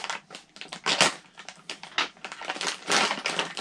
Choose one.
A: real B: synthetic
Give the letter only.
A